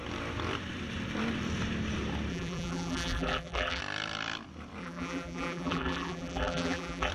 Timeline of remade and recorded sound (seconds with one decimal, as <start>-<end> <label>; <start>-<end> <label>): 0.0-2.3 recorded; 2.3-3.8 remade; 3.8-4.8 recorded; 4.8-7.1 remade